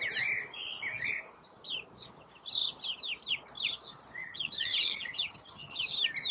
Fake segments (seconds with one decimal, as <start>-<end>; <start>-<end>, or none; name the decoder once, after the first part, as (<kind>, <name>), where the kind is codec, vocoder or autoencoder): 4.2-5.8 (vocoder, HiFi-GAN)